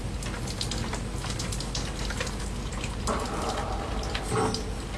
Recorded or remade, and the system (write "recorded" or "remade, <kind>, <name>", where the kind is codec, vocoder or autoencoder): recorded